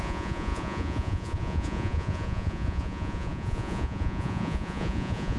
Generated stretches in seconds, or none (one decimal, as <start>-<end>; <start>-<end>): 0.0-5.4